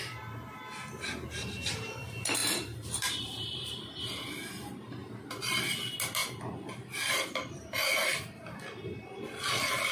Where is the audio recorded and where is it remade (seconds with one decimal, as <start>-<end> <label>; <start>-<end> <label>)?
0.0-2.4 recorded; 2.4-3.7 remade; 3.7-6.2 recorded; 6.2-8.6 remade; 8.6-9.9 recorded